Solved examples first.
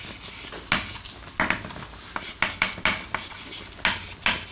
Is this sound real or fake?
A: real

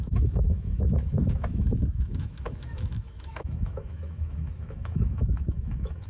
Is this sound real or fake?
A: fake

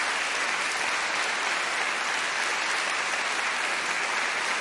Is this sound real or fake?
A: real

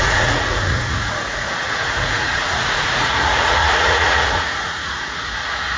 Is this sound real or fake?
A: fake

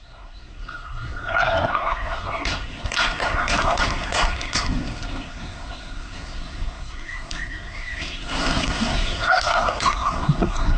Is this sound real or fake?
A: fake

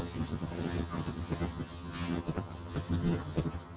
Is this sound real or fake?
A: fake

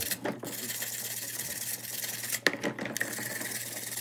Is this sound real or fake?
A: real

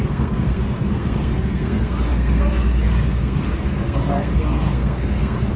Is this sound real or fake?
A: fake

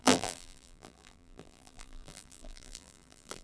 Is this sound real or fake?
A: fake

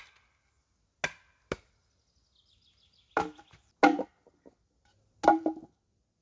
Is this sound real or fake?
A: real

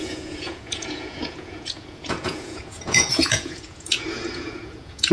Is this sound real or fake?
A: fake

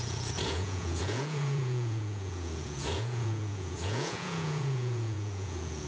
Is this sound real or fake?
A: fake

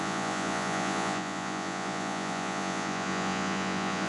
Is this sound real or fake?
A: fake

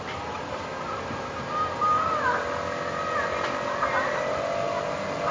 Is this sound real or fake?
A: real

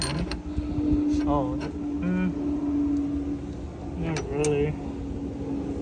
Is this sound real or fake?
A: real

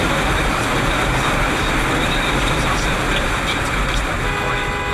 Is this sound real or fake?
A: real